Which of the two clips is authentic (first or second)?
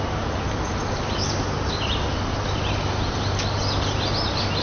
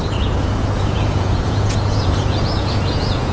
first